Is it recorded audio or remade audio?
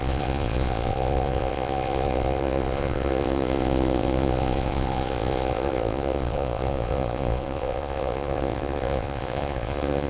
remade